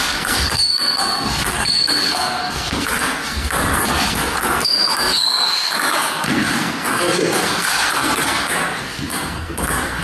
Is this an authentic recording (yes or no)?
no